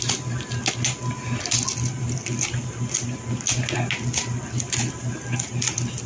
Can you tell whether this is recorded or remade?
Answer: recorded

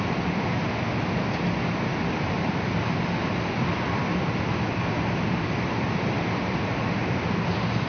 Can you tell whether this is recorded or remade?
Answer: recorded